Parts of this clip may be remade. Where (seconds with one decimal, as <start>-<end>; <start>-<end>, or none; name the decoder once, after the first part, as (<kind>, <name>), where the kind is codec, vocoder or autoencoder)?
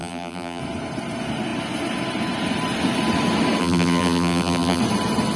0.0-0.6 (vocoder, BigVGAN v2); 3.6-4.8